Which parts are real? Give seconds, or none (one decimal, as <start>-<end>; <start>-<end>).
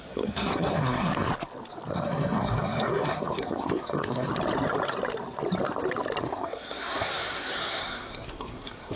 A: 1.3-1.9; 4.3-6.2